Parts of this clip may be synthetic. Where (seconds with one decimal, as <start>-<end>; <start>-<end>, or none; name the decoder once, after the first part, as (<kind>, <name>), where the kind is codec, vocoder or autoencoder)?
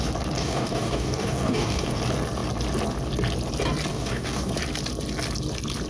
0.4-2.0 (codec, DAC); 3.9-4.5